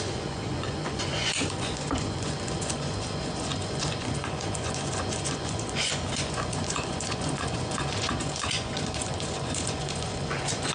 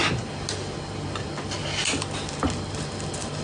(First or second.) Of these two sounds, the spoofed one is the first